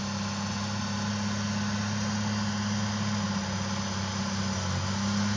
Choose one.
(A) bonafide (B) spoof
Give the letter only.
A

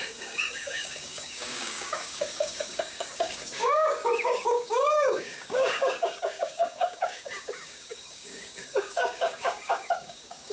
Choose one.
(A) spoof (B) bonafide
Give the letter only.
A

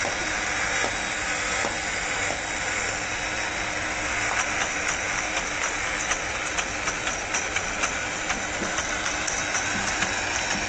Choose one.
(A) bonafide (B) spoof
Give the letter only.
A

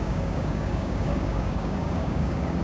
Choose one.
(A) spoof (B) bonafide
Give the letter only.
A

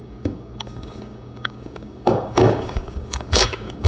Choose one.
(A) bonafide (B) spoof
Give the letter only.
B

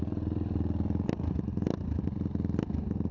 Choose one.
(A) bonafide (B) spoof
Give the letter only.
A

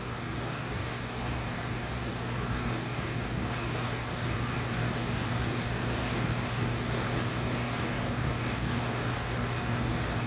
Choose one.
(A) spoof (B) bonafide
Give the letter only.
A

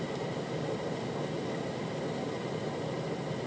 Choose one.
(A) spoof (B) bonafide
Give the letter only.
B